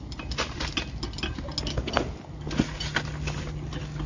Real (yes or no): yes